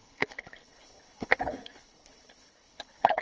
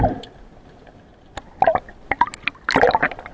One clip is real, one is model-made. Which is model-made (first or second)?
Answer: first